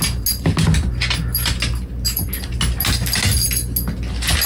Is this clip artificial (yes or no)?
no